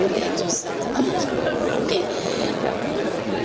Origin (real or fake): fake